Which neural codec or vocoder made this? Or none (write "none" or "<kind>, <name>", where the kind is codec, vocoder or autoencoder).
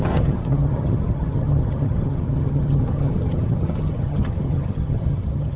vocoder, HiFi-GAN